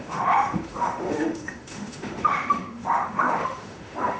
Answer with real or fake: fake